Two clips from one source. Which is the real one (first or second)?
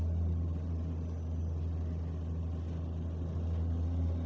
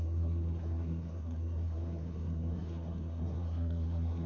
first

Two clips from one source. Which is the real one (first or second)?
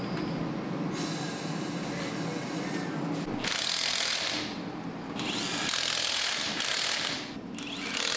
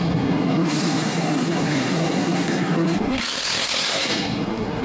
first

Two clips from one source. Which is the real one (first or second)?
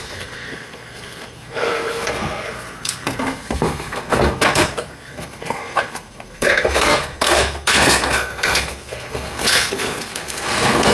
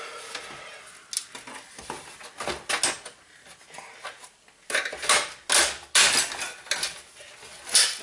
second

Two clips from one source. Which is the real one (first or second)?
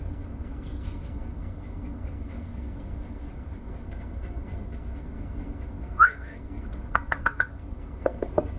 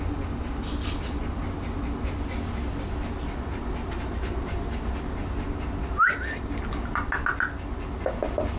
second